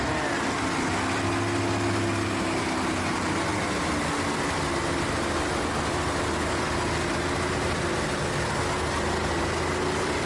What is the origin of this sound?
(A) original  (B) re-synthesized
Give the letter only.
A